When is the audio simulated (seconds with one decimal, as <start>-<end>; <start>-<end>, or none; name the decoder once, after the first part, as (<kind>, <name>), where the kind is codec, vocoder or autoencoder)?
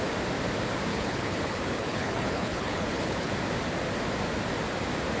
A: 0.9-3.3 (codec, HILCodec)